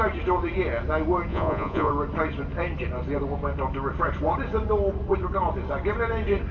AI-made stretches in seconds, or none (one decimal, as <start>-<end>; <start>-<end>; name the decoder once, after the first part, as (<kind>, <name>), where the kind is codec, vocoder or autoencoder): 1.3-1.9 (vocoder, Vocos)